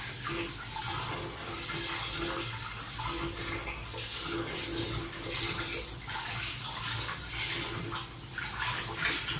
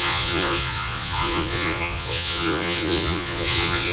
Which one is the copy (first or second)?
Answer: second